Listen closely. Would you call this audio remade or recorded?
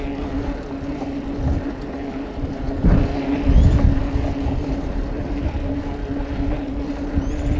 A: recorded